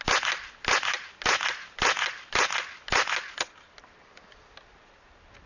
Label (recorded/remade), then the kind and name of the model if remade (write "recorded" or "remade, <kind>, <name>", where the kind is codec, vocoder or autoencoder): recorded